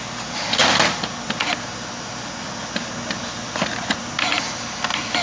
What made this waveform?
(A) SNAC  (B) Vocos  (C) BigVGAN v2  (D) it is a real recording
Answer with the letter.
D